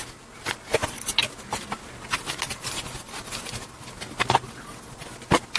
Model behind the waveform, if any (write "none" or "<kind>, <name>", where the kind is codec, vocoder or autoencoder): none